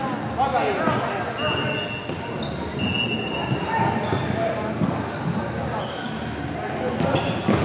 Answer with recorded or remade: recorded